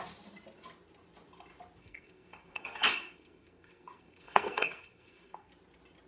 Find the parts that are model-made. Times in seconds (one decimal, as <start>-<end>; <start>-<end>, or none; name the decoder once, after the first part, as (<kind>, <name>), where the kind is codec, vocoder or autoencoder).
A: 1.8-5.5 (codec, SNAC)